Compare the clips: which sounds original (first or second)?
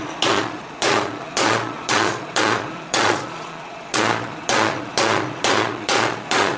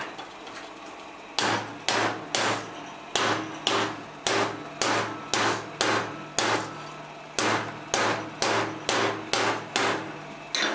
second